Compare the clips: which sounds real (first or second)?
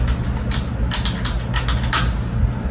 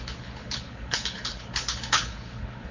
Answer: first